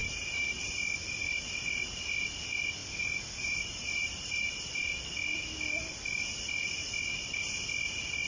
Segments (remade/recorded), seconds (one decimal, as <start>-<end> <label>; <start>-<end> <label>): 0.0-0.7 remade; 0.7-2.8 recorded; 2.8-5.0 remade; 5.0-8.3 recorded